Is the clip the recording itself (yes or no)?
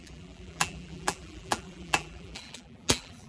no